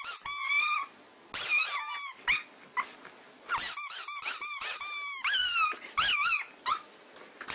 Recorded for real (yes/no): yes